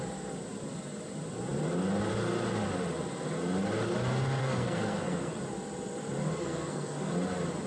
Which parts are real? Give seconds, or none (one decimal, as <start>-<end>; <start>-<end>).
0.0-4.4; 5.4-6.4; 7.1-7.7